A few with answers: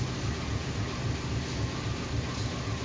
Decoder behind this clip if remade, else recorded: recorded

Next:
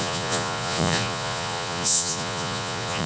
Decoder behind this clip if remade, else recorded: remade, vocoder, Vocos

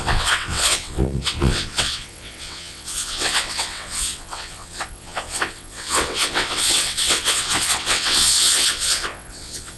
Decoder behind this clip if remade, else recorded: remade, vocoder, WaveNeXt